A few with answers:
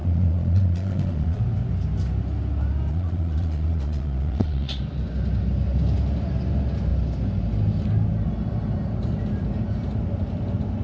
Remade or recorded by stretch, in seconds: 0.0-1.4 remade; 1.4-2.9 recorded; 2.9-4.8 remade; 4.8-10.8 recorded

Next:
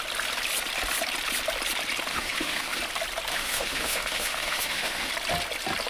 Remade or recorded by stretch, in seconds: 0.0-2.1 recorded; 2.1-2.8 remade; 2.8-3.3 recorded; 3.3-5.1 remade; 5.1-5.9 recorded

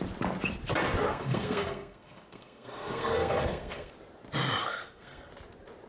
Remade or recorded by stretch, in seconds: 0.0-1.1 recorded; 1.1-3.9 remade; 3.9-4.6 recorded; 4.6-5.3 remade; 5.3-5.9 recorded